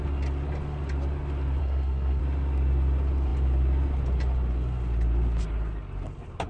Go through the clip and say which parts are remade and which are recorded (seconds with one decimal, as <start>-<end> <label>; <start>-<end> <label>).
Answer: 0.0-1.6 recorded; 1.6-2.2 remade; 2.2-6.5 recorded